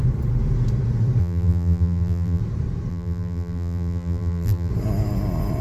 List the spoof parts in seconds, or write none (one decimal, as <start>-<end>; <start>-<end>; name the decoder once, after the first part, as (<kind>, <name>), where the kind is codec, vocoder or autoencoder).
1.2-2.4 (vocoder, BigVGAN v2); 2.9-4.7